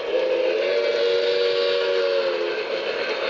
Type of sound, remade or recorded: recorded